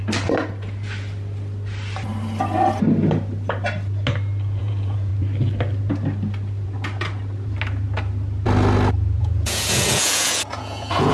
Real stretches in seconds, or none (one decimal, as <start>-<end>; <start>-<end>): 0.0-4.6; 5.1-9.2